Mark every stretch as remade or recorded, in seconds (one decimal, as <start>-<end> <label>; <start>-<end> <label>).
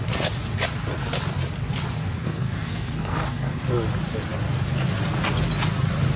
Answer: 0.0-2.2 recorded; 2.2-3.6 remade; 3.6-6.2 recorded